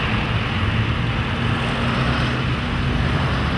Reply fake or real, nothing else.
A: real